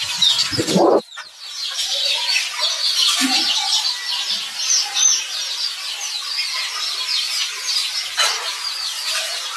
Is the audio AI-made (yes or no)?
no